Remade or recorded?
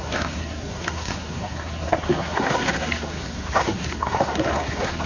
remade